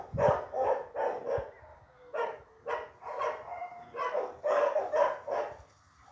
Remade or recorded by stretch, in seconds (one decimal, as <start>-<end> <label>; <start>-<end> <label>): 0.0-1.7 recorded; 1.7-2.7 remade; 2.7-3.6 recorded; 3.6-4.8 remade; 4.8-6.1 recorded